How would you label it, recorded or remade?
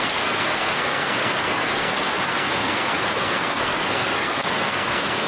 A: remade